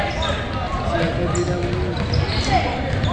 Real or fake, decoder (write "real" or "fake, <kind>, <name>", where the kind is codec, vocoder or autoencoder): real